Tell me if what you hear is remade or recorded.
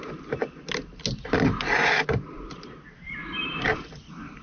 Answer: recorded